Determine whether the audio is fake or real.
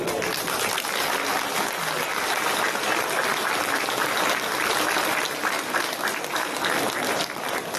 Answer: real